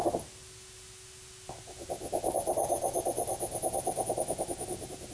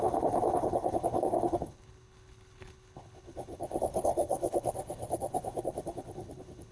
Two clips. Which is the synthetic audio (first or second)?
second